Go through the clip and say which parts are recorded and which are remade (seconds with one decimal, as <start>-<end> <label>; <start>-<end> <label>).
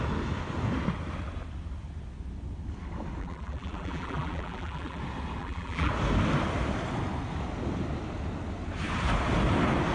0.0-3.2 recorded; 3.2-5.0 remade; 5.0-5.4 recorded; 5.4-5.9 remade; 5.9-9.9 recorded